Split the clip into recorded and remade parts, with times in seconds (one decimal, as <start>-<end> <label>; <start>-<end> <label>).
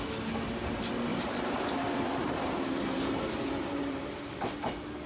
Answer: 0.0-1.1 recorded; 1.1-4.2 remade; 4.2-5.1 recorded